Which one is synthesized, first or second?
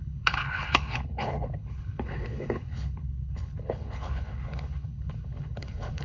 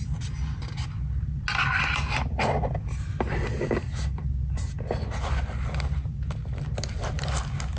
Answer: first